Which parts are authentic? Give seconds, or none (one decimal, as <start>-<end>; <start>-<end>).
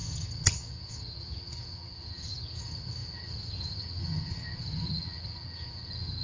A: none